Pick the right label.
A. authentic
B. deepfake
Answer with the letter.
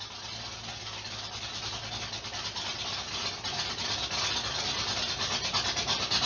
A